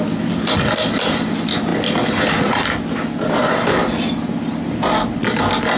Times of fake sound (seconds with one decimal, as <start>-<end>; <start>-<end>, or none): none